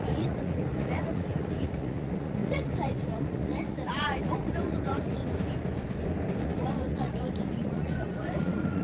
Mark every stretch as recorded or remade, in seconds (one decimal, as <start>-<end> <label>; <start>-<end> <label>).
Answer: 0.0-5.2 remade; 5.2-6.4 recorded; 6.4-8.8 remade